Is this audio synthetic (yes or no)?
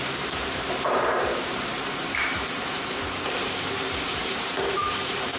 yes